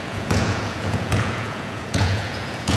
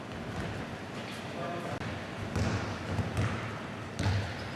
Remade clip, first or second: first